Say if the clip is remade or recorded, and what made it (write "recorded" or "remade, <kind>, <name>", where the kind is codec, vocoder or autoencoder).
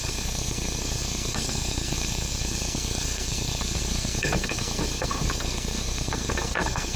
remade, codec, SNAC